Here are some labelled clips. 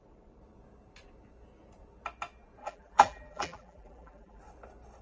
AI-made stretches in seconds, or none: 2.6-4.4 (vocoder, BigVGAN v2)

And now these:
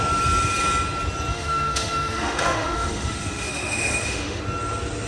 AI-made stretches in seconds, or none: 1.3-4.4 (autoencoder, DAC-VAE)

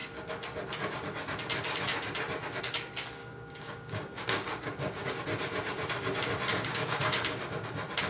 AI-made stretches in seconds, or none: 3.2-5.1 (codec, DAC); 6.5-7.4